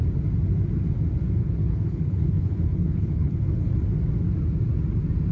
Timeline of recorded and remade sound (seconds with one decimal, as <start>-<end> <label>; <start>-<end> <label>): 0.0-1.4 recorded; 1.4-3.7 remade; 3.7-5.3 recorded